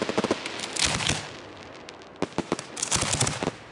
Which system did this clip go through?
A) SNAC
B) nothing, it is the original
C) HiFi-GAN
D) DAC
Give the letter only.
B